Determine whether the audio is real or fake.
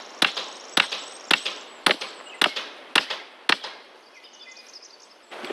real